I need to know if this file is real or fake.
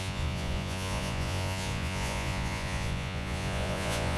fake